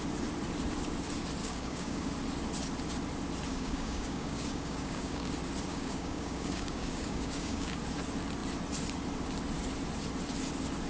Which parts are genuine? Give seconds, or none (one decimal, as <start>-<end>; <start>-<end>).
0.0-1.4; 2.1-3.5; 5.3-5.7; 7.8-10.9